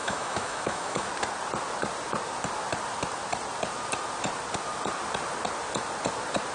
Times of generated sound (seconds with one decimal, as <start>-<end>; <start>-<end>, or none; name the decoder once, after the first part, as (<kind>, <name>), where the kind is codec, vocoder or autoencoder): 0.0-1.1 (autoencoder, DAC-VAE)